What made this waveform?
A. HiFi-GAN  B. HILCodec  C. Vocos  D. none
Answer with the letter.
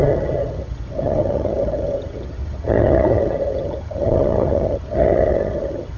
A